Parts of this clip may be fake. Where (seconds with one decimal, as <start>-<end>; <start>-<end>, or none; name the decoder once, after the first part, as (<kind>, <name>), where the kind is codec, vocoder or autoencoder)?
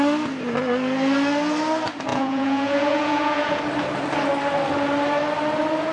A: 2.1-3.6 (vocoder, Vocos)